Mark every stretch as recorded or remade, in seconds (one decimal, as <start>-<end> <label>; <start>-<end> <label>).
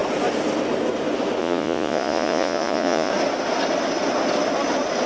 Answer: 0.0-1.4 recorded; 1.4-3.1 remade; 3.1-5.1 recorded